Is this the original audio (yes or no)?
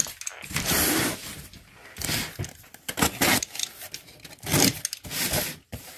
yes